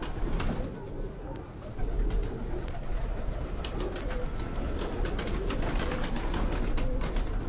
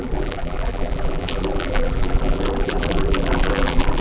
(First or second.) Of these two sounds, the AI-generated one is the second